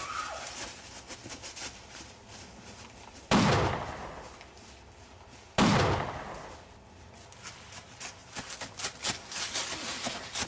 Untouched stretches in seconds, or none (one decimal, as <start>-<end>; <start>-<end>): 0.0-10.5